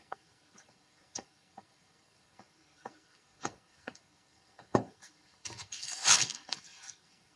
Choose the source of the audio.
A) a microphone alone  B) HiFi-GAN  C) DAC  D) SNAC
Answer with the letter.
D